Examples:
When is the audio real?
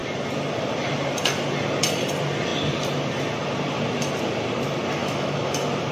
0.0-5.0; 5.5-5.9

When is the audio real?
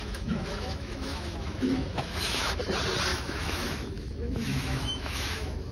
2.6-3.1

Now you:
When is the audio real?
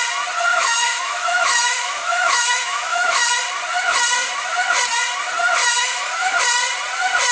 0.0-0.5; 3.4-5.6; 6.4-7.3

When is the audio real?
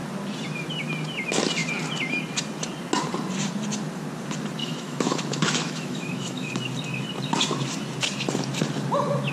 0.0-4.6; 6.5-9.3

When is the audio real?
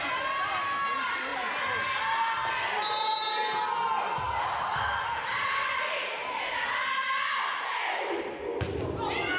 0.0-7.7; 8.2-9.4